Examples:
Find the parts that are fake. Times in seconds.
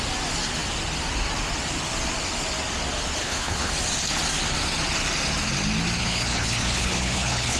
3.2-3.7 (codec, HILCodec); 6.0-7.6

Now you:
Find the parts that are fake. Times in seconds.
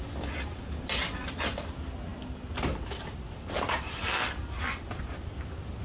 none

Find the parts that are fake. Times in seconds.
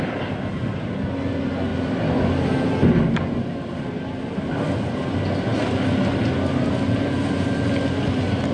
none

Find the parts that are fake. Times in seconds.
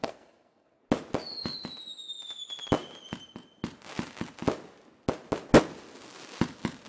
0.0-0.8 (codec, SNAC)